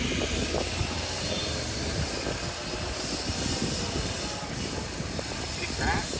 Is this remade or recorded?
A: recorded